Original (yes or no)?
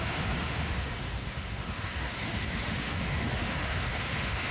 no